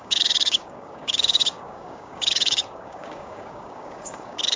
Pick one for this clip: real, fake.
fake